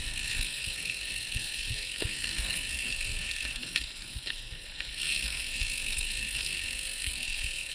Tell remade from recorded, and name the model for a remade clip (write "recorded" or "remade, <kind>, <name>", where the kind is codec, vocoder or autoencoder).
remade, codec, SNAC